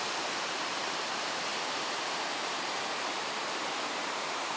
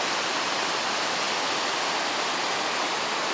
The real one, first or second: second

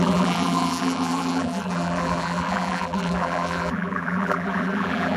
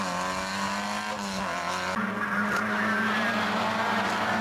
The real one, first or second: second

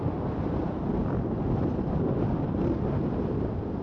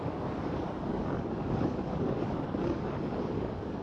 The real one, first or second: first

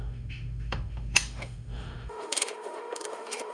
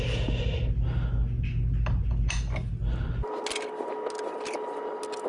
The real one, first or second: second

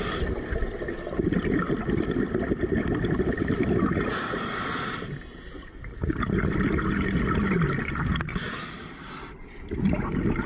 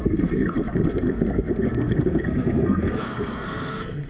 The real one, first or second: first